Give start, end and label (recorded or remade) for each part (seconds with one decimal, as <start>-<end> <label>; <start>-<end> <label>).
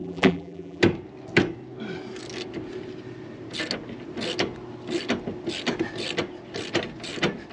0.0-0.8 remade; 0.8-7.5 recorded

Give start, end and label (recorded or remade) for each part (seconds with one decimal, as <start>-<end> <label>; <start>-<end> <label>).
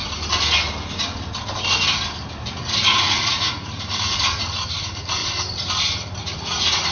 0.0-2.5 recorded; 2.5-5.2 remade; 5.2-6.2 recorded; 6.2-6.9 remade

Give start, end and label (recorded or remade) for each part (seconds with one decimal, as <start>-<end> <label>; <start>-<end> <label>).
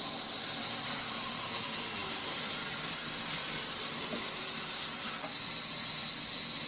0.0-6.7 recorded